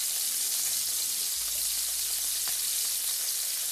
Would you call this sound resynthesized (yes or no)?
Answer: no